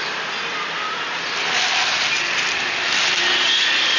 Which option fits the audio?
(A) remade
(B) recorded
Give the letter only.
B